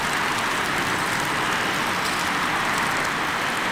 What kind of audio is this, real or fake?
real